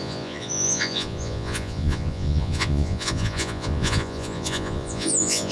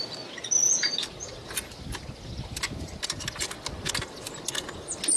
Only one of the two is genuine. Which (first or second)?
second